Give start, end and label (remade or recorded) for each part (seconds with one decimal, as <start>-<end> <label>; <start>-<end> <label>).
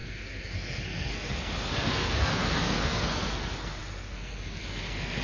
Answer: 0.0-5.2 remade